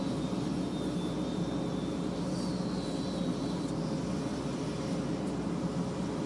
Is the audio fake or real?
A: real